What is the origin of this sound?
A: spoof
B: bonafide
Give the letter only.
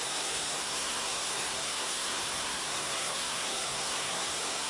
A